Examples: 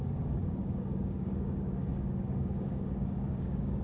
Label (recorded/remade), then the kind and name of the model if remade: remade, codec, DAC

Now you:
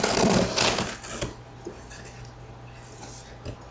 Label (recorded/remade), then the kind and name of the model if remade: recorded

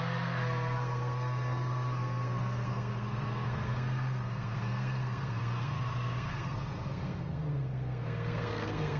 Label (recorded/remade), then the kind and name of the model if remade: remade, codec, SNAC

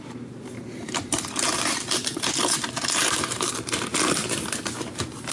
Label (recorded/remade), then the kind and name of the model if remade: remade, vocoder, BigVGAN v2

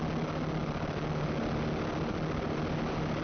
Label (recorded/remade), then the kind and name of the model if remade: recorded